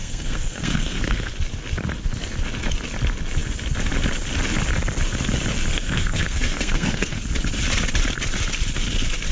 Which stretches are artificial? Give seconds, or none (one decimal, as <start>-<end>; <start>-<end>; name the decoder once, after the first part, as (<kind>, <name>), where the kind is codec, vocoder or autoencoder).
0.0-1.3 (codec, SNAC); 5.7-7.2